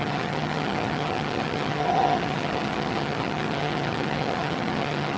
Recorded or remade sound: remade